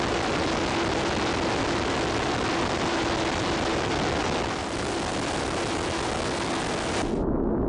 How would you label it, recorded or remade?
recorded